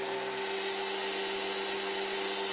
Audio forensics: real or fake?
real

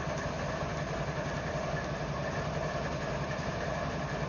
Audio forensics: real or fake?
real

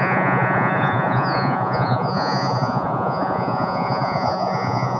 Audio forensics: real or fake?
fake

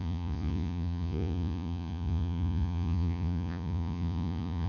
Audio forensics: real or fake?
fake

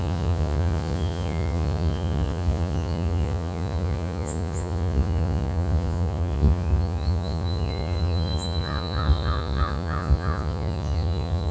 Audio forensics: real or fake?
fake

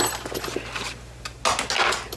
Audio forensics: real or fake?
real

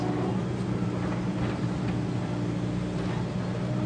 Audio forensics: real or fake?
real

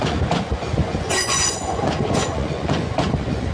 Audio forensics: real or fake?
fake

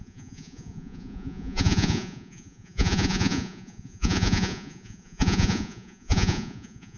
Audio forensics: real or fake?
fake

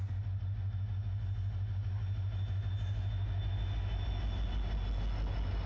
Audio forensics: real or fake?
real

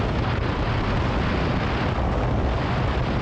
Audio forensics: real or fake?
real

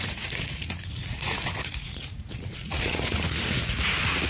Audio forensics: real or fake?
fake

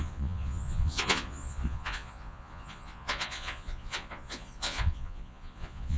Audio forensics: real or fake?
fake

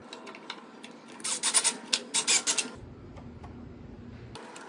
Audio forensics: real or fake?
real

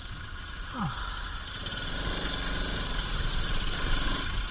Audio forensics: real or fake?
real